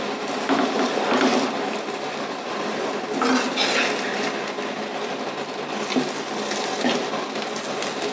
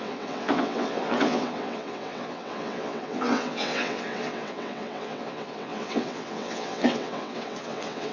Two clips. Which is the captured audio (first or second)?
first